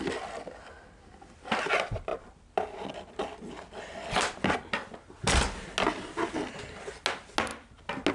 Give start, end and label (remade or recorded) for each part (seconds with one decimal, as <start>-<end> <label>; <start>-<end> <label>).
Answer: 0.0-8.1 recorded